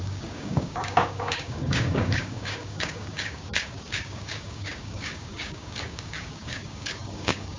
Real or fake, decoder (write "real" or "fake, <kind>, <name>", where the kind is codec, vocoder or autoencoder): fake, codec, DAC